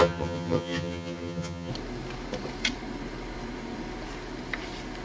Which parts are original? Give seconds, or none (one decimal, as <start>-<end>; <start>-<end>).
1.7-5.0